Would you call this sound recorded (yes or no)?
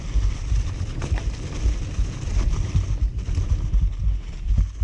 yes